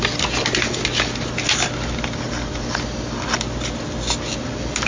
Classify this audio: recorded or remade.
recorded